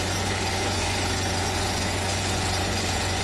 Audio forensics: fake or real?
fake